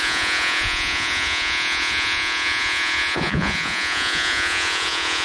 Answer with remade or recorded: remade